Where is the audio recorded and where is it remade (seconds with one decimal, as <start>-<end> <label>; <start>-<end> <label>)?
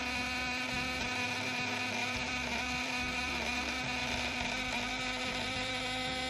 0.0-2.0 recorded; 2.0-3.3 remade; 3.3-4.0 recorded; 4.0-5.7 remade; 5.7-6.3 recorded